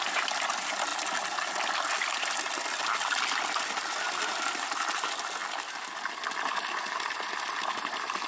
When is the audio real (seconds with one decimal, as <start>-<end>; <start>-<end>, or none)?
0.0-8.3